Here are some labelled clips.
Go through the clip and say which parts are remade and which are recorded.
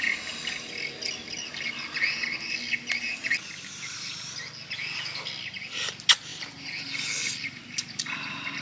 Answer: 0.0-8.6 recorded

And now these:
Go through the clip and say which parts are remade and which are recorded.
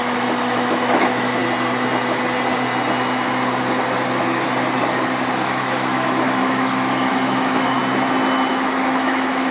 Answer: 0.0-1.4 remade; 1.4-5.3 recorded; 5.3-7.8 remade; 7.8-8.5 recorded; 8.5-9.5 remade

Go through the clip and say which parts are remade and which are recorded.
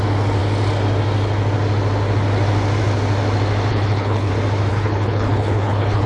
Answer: 0.0-3.7 recorded; 3.7-4.3 remade; 4.3-4.7 recorded; 4.7-6.1 remade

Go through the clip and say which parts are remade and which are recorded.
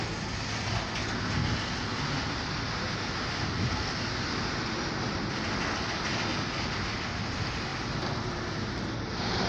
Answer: 0.0-9.5 recorded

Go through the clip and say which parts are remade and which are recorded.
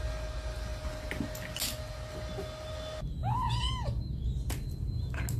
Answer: 0.0-3.2 recorded; 3.2-4.0 remade; 4.0-5.4 recorded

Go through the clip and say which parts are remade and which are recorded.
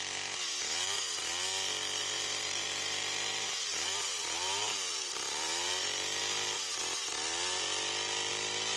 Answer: 0.0-2.0 recorded; 2.0-5.7 remade; 5.7-8.8 recorded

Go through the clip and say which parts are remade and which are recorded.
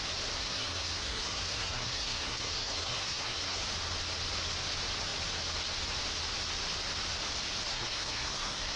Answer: 0.0-0.4 recorded; 0.4-3.6 remade; 3.6-7.7 recorded; 7.7-8.8 remade